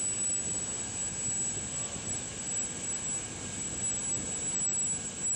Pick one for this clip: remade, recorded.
recorded